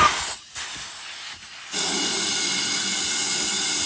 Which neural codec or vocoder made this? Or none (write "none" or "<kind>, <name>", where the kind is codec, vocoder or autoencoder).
none